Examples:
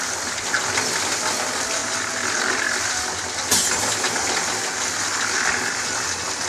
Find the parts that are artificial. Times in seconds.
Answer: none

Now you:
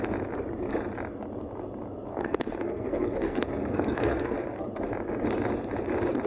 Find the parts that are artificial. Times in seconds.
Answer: 2.1-4.6 (codec, SNAC)

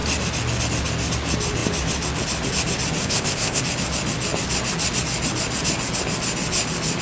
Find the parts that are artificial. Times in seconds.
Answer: 3.0-3.6 (codec, ZipCodec)

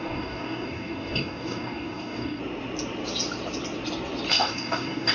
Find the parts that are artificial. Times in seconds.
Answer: 0.0-2.4 (codec, DAC); 4.3-5.1

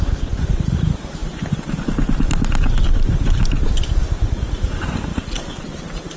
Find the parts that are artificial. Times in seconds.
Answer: 0.0-1.2 (vocoder, BigVGAN v2); 3.7-6.2

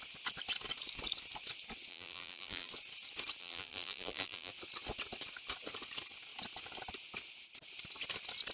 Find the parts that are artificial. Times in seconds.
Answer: 1.9-2.7 (vocoder, BigVGAN v2); 3.4-4.5